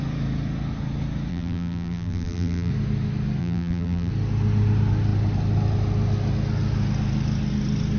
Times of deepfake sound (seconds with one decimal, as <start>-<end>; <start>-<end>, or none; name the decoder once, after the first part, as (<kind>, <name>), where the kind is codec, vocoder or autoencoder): 1.3-2.7 (vocoder, BigVGAN v2); 3.4-4.1

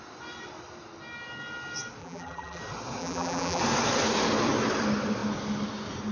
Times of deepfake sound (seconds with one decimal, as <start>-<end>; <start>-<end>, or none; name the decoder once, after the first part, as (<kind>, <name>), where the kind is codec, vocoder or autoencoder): 2.0-2.6 (vocoder, BigVGAN v2); 3.0-3.6

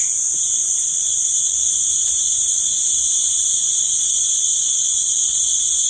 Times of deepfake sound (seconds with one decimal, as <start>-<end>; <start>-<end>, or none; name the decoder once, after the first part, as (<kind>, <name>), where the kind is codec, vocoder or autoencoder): 0.6-2.8 (vocoder, Vocos); 3.6-5.9

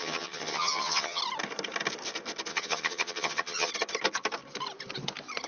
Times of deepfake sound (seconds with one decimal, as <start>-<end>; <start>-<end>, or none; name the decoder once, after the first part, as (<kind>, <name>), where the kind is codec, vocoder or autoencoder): 0.0-1.2 (vocoder, HiFi-GAN); 2.5-3.7